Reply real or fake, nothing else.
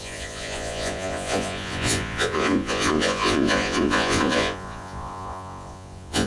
fake